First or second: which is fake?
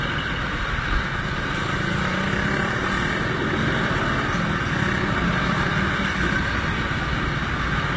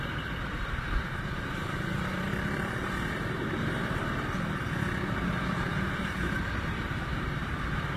second